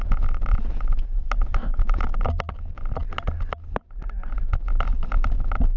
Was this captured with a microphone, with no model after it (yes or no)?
yes